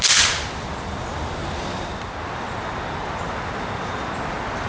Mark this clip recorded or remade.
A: recorded